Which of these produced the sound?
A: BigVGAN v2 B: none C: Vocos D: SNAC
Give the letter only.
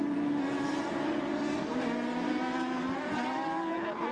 B